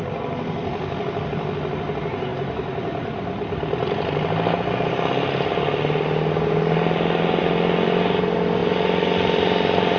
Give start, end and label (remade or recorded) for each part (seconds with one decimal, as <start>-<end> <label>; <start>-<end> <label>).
0.0-10.0 recorded